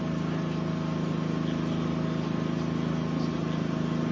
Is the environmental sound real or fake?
real